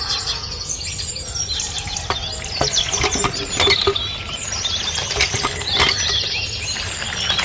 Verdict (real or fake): real